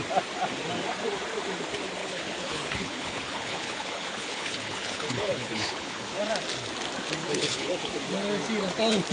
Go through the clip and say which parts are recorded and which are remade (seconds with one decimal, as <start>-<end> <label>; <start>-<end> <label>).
0.0-2.0 recorded; 2.0-6.2 remade; 6.2-7.2 recorded; 7.2-7.7 remade; 7.7-9.1 recorded